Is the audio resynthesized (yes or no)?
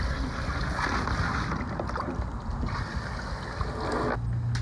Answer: no